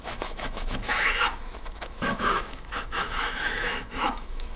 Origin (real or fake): fake